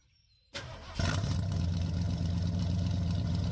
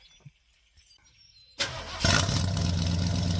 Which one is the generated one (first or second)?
first